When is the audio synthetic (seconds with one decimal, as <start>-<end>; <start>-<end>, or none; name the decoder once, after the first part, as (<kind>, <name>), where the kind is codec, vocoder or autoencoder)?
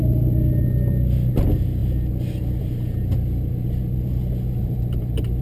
4.6-5.4 (vocoder, BigVGAN v2)